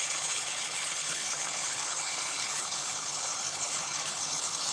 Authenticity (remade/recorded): remade